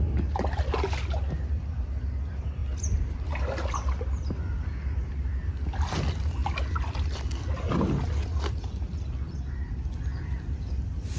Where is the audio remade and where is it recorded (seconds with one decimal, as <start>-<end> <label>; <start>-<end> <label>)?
0.0-11.2 recorded